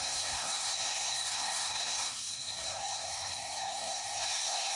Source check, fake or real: fake